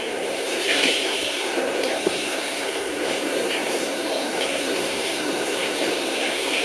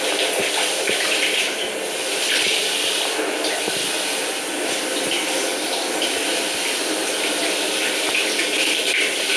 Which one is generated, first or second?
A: first